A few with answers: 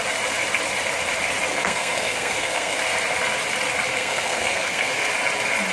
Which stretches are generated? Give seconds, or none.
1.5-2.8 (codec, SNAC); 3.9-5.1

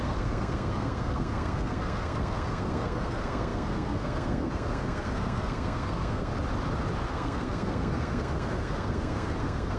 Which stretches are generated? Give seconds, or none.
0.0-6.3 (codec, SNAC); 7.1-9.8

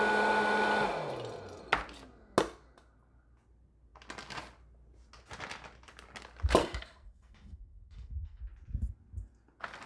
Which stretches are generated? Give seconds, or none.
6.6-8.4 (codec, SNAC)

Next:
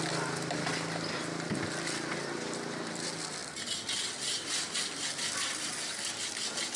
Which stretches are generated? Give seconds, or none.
none